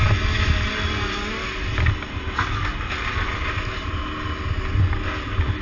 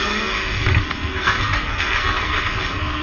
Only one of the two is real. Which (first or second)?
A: first